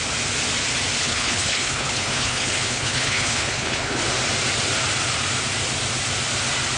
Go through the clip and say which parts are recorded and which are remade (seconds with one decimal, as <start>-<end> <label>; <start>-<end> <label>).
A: 0.0-1.0 recorded; 1.0-4.0 remade; 4.0-6.8 recorded